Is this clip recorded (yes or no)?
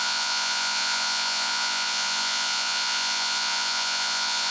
no